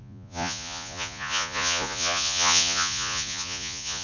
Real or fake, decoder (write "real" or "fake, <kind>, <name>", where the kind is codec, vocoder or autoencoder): fake, vocoder, Vocos